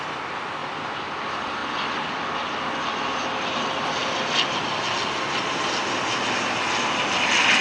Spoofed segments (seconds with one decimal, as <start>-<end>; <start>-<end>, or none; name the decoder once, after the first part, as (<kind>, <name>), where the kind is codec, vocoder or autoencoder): none